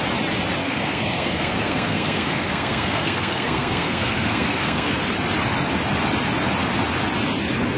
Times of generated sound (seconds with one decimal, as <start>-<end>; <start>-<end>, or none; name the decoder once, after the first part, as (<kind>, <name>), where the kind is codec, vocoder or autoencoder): 0.6-4.9 (codec, SNAC)